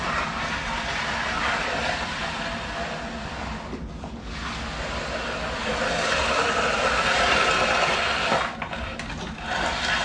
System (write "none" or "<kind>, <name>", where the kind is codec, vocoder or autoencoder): none